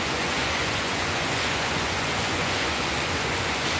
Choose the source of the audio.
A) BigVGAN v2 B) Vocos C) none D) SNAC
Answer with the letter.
B